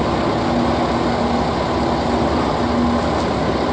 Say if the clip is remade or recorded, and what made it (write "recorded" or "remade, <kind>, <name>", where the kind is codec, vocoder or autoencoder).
recorded